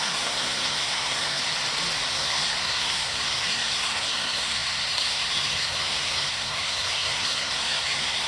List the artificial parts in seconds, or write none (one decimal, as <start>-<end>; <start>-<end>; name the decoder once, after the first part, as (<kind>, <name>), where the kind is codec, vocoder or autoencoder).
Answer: 0.0-1.4 (codec, SNAC); 2.1-8.3